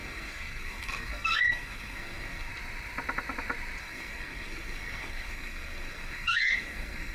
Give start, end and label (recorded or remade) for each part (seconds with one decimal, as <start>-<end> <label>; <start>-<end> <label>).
0.0-2.5 remade; 2.5-3.8 recorded; 3.8-7.1 remade